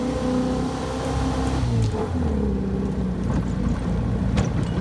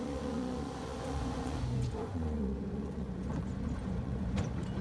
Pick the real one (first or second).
first